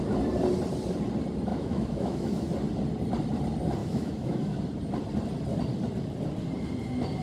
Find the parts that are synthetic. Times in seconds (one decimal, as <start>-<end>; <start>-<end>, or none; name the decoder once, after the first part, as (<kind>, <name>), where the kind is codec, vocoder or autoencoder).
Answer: 1.5-2.5 (autoencoder, DAC-VAE); 3.8-4.6